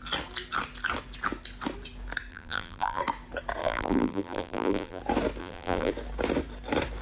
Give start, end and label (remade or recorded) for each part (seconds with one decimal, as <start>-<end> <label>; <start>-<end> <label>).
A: 0.0-2.3 recorded; 2.3-3.0 remade; 3.0-3.6 recorded; 3.6-5.0 remade; 5.0-5.4 recorded; 5.4-5.9 remade; 5.9-7.0 recorded